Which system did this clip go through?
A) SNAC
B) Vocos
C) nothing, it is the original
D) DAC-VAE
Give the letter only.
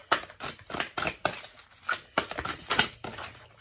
C